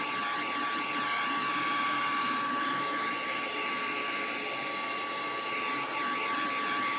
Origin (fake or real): real